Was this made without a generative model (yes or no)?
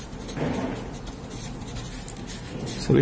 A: yes